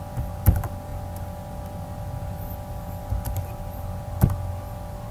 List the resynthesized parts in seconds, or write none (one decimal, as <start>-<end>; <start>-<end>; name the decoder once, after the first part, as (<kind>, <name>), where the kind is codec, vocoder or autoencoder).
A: none